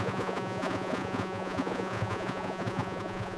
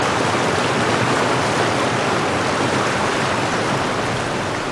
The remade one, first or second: first